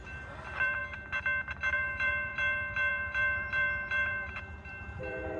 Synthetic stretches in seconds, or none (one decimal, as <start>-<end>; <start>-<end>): 0.0-0.8; 1.7-5.4